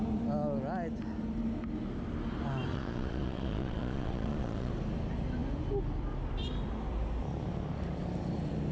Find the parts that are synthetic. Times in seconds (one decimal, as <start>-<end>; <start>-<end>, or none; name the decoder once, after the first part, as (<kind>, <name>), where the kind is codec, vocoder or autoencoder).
2.7-4.7 (vocoder, Vocos)